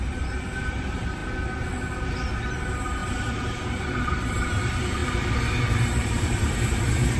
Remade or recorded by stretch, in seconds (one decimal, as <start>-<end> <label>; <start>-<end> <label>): 0.0-1.2 remade; 1.2-2.5 recorded; 2.5-7.2 remade